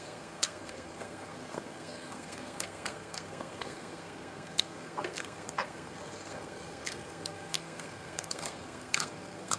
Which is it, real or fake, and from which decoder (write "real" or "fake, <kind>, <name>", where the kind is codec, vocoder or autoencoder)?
fake, codec, SNAC